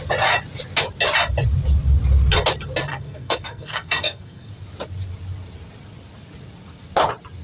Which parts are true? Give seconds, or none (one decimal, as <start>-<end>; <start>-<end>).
0.0-2.9; 4.5-7.4

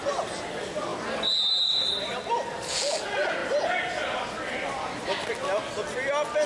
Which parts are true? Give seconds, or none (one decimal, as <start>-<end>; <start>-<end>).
0.0-6.5

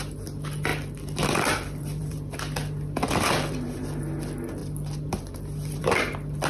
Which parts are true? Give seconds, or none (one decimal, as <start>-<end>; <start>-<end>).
0.0-0.7; 4.0-4.6; 6.0-6.5

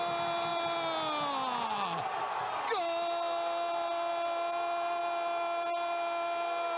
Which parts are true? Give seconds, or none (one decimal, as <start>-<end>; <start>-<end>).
0.0-6.8